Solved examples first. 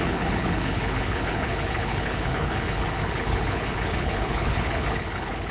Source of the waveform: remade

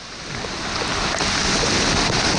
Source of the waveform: recorded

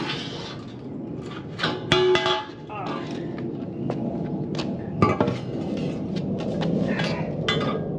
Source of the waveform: recorded